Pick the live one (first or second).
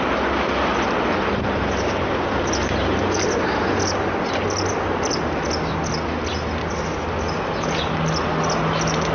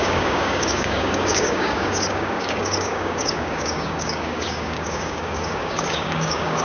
first